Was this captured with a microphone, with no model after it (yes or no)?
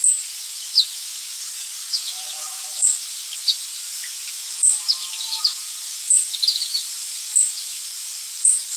no